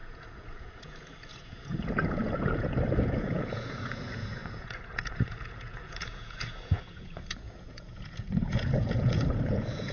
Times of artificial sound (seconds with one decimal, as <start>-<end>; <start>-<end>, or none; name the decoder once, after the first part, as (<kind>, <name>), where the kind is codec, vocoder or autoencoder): 0.0-9.9 (vocoder, Vocos)